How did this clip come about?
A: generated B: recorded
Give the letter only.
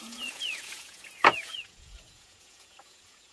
A